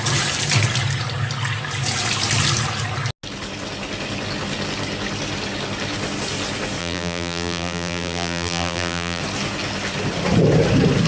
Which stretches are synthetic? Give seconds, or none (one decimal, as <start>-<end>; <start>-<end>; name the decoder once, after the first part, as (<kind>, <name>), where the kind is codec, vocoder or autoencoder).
6.8-9.2 (vocoder, BigVGAN v2)